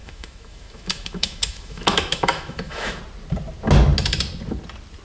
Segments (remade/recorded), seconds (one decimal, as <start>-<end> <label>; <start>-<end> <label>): 0.0-3.0 remade; 3.0-5.0 recorded